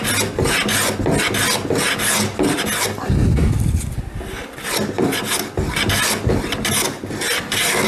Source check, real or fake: real